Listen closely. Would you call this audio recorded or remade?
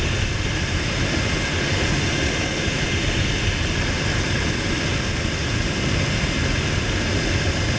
recorded